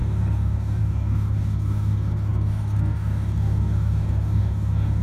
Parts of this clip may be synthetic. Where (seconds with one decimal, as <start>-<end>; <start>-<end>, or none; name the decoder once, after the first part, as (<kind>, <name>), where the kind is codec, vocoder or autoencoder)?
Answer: 0.0-5.0 (codec, DAC)